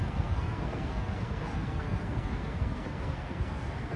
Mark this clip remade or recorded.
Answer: remade